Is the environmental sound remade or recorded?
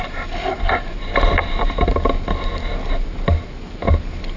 recorded